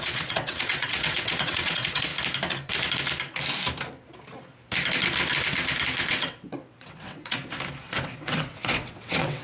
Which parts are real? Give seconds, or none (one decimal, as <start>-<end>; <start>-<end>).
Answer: 2.1-6.1; 7.4-7.9